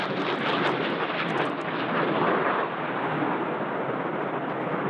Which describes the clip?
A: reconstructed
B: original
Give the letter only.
B